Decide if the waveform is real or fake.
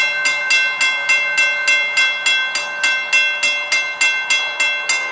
real